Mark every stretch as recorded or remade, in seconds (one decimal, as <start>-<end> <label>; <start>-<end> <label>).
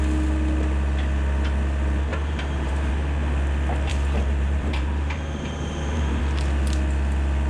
0.0-2.1 recorded; 2.1-2.9 remade; 2.9-3.9 recorded; 3.9-6.2 remade; 6.2-7.5 recorded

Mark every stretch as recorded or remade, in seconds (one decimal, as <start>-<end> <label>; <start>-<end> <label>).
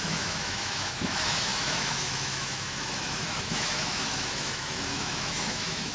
0.0-5.9 remade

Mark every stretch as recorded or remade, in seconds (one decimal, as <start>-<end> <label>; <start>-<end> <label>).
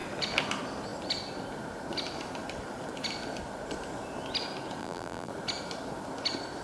0.0-4.8 recorded; 4.8-5.3 remade; 5.3-6.6 recorded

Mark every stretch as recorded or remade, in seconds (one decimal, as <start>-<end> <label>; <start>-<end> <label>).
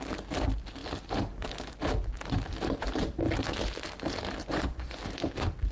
0.0-4.4 recorded; 4.4-5.0 remade; 5.0-5.7 recorded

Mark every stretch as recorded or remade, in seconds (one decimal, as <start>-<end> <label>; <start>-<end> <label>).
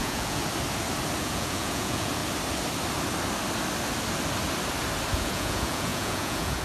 0.0-0.4 remade; 0.4-1.2 recorded; 1.2-2.2 remade; 2.2-5.1 recorded; 5.1-6.6 remade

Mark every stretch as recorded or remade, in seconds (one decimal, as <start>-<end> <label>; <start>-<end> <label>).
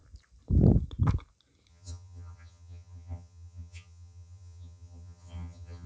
0.0-1.7 recorded; 1.7-5.9 remade